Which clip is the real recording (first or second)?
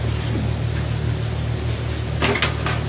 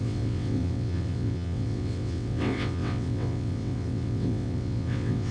first